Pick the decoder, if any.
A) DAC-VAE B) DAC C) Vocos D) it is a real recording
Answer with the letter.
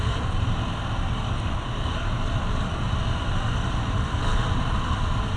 D